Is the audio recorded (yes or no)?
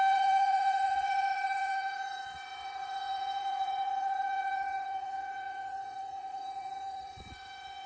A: no